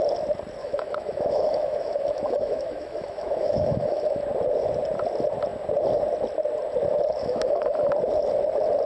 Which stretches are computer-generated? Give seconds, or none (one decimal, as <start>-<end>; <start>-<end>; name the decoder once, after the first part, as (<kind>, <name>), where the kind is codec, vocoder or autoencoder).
0.6-4.2 (autoencoder, DAC-VAE); 7.2-7.9